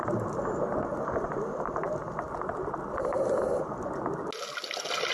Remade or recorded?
recorded